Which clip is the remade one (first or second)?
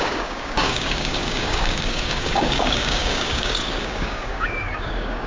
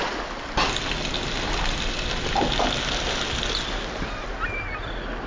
first